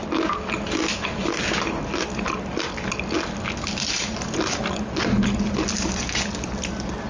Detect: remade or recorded recorded